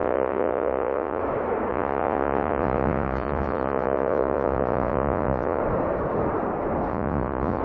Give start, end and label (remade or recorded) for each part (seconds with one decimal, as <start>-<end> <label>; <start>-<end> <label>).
0.0-1.2 remade; 1.2-1.7 recorded; 1.7-5.6 remade; 5.6-6.9 recorded; 6.9-7.6 remade